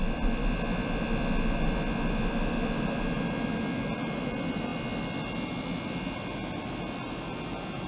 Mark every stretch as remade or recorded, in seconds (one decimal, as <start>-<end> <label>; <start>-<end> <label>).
0.0-0.4 remade; 0.4-2.1 recorded; 2.1-4.7 remade; 4.7-5.6 recorded; 5.6-7.9 remade